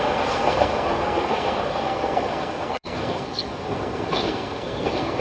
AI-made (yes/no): yes